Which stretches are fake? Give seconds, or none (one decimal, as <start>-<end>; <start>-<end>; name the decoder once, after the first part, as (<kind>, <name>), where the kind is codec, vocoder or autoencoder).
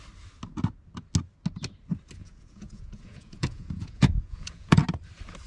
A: 2.2-4.8 (vocoder, Vocos)